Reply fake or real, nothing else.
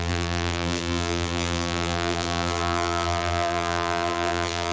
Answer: fake